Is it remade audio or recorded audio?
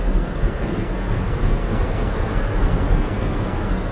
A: remade